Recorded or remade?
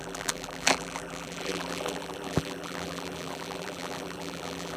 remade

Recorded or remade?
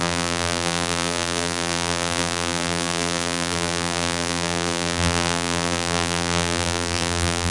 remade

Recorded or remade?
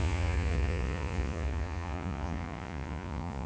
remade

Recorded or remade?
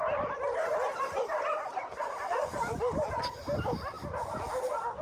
recorded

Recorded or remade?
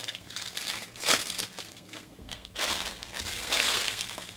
remade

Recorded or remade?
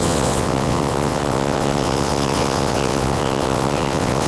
remade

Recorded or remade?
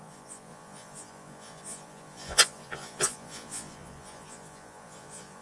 remade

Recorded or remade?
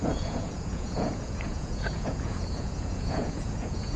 remade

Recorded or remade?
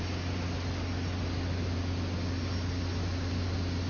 recorded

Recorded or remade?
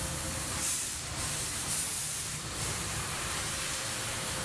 remade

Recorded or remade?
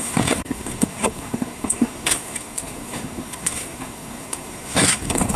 remade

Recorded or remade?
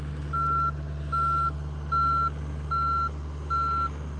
recorded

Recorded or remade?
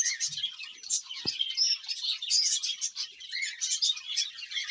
recorded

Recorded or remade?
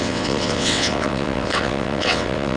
remade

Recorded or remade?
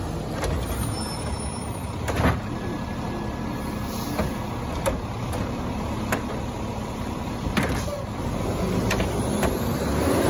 recorded